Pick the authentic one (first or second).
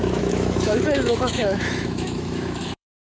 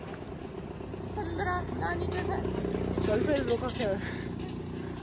second